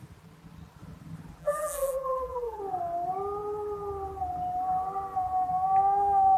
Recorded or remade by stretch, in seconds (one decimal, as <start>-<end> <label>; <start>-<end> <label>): 0.0-1.4 recorded; 1.4-2.6 remade; 2.6-6.4 recorded